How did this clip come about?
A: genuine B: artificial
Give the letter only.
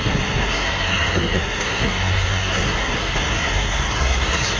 B